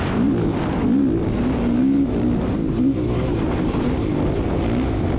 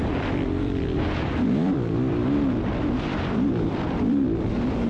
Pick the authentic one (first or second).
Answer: first